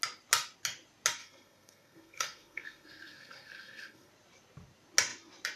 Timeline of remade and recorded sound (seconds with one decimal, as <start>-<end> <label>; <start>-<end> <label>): 0.0-1.2 recorded; 1.2-4.1 remade; 4.1-5.6 recorded